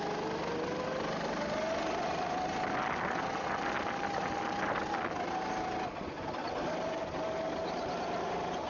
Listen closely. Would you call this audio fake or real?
real